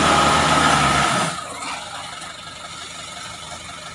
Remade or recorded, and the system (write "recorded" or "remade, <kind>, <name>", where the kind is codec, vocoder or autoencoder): recorded